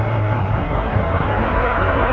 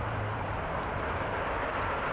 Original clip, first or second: second